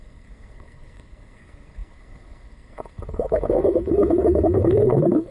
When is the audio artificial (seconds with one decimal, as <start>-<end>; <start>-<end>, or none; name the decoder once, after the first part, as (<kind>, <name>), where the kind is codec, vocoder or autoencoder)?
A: 0.0-5.3 (codec, SNAC)